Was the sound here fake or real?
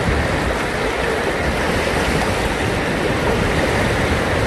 real